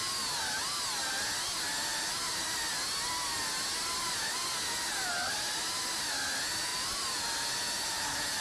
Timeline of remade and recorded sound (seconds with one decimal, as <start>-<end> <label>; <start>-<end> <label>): 0.0-1.9 recorded; 1.9-2.5 remade; 2.5-6.7 recorded; 6.7-8.4 remade